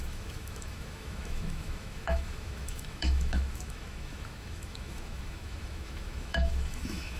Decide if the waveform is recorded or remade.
remade